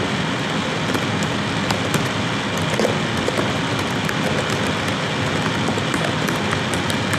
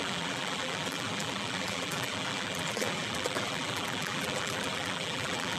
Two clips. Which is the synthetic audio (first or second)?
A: second